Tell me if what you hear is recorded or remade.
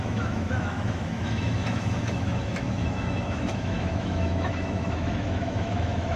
remade